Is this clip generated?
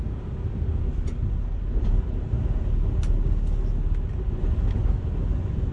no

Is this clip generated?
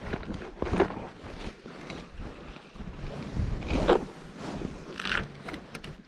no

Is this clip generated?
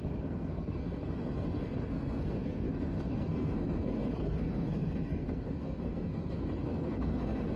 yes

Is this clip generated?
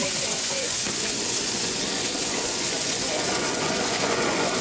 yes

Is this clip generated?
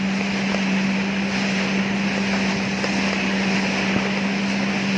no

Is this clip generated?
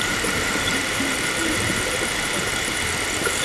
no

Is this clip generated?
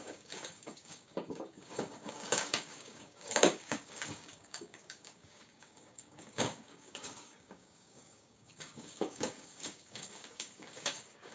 yes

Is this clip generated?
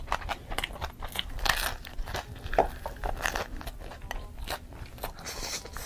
no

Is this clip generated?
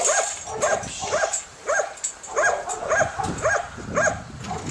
no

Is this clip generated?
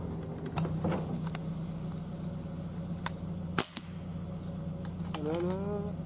no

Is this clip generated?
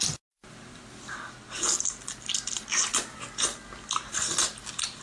no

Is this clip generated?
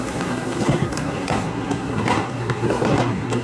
yes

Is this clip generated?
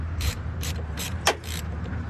yes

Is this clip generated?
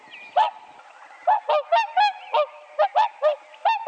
no